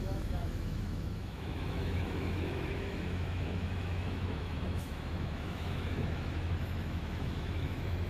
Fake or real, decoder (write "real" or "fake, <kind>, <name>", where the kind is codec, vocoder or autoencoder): fake, autoencoder, DAC-VAE